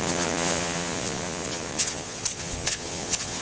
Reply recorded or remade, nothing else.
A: remade